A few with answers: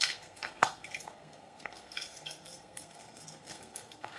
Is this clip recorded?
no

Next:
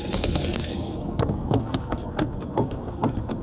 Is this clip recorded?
no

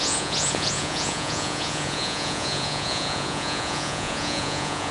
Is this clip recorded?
no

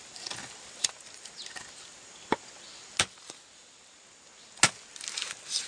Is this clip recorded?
yes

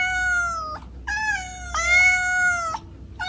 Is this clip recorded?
yes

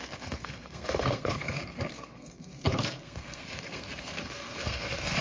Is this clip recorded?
no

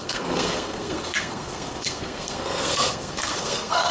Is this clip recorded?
no